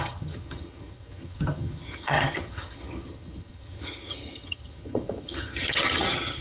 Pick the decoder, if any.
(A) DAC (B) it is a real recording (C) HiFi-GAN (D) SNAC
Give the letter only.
C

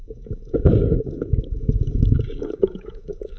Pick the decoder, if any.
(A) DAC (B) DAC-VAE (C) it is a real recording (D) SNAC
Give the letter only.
A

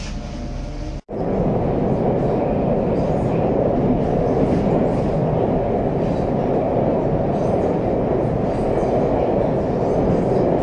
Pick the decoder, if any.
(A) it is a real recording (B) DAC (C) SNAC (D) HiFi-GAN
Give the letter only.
A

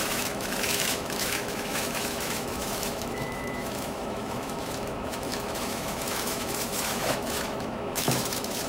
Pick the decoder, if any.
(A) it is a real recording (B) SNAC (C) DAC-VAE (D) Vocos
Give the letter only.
C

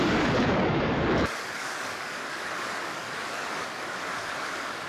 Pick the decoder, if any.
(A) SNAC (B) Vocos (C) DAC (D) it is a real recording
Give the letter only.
C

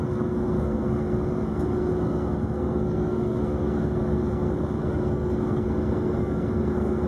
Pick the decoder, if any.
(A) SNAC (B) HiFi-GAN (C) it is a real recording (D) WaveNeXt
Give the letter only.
A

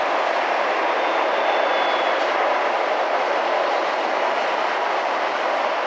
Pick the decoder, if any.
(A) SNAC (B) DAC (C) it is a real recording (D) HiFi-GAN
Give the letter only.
C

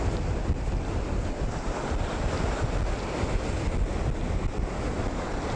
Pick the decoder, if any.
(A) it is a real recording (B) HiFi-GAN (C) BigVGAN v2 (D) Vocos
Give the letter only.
A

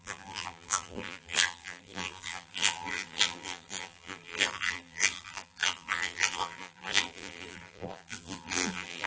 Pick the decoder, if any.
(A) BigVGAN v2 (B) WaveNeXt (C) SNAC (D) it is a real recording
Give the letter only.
A